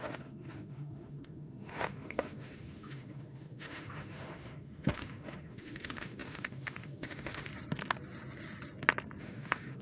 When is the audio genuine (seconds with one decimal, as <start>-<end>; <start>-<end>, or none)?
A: 7.5-9.2